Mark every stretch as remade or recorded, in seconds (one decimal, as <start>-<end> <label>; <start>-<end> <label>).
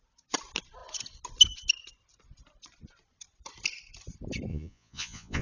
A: 0.0-4.5 recorded; 4.5-5.4 remade